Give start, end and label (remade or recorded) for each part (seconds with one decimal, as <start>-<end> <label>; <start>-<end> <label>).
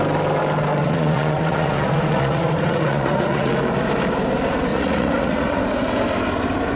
0.0-0.8 recorded; 0.8-3.5 remade; 3.5-4.7 recorded; 4.7-5.6 remade; 5.6-6.8 recorded